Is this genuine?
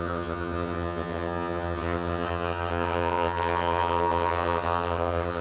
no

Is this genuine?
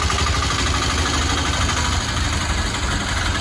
yes